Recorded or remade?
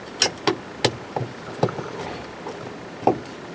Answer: recorded